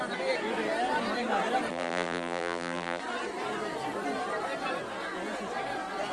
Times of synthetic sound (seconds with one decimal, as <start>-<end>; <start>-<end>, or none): 1.7-3.0